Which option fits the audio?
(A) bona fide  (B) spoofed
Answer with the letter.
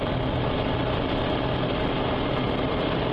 A